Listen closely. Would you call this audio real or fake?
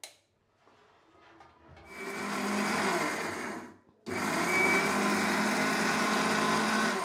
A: real